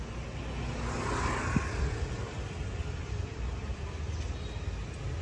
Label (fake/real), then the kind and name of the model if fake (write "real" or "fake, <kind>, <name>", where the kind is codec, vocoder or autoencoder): real